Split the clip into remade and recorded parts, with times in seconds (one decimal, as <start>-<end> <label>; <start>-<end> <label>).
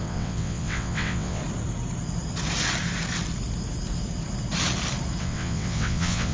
0.0-1.4 remade; 1.4-5.2 recorded; 5.2-6.3 remade